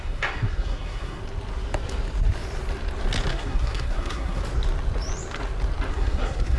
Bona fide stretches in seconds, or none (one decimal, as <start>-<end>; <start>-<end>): 1.2-3.3; 4.4-5.9